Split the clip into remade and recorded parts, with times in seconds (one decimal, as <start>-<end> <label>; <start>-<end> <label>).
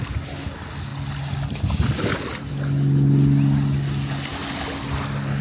0.0-5.4 recorded